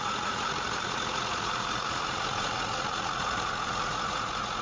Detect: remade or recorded remade